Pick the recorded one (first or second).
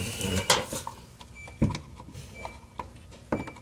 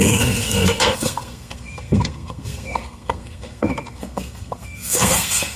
first